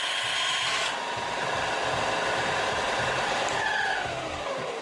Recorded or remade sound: recorded